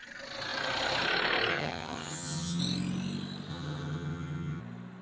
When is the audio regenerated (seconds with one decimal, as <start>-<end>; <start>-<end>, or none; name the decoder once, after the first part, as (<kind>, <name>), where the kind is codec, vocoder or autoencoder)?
1.5-2.6 (vocoder, HiFi-GAN); 3.5-4.6